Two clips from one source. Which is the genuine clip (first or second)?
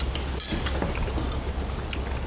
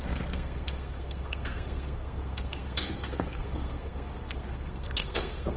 first